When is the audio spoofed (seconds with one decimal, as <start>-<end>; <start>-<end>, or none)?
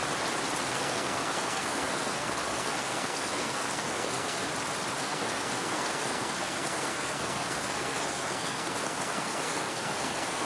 0.6-4.5; 5.0-10.5